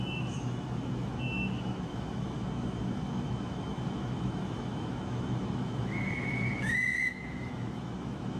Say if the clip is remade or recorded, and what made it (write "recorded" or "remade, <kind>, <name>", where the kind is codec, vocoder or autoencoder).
remade, autoencoder, DAC-VAE